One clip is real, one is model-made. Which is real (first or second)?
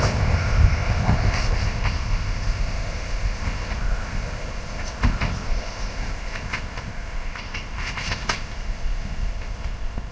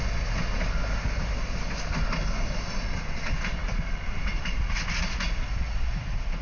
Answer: second